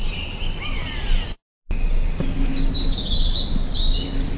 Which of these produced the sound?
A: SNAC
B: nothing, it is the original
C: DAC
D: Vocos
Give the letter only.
B